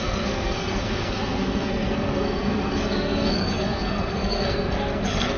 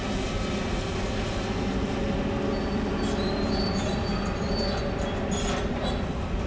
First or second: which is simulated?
first